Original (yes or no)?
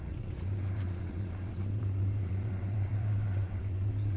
no